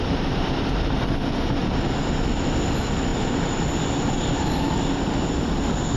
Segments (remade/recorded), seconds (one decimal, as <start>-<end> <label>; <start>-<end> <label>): 0.0-6.0 recorded